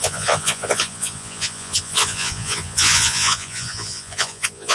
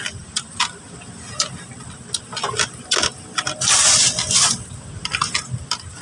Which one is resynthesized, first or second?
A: first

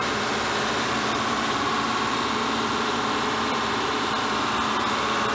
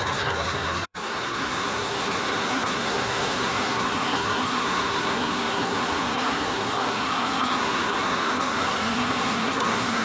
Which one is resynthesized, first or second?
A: second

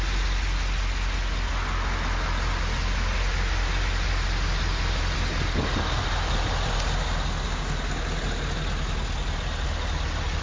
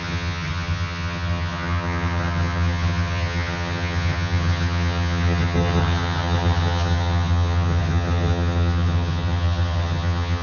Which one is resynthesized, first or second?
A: second